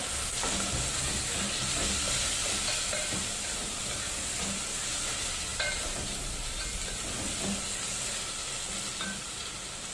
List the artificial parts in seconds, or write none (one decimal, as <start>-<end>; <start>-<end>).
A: 2.4-3.2; 5.5-6.0